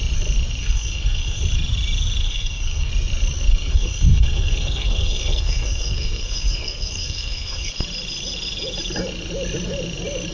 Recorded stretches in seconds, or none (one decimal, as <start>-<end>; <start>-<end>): 0.0-0.6; 1.4-2.2; 2.9-3.5; 7.7-10.3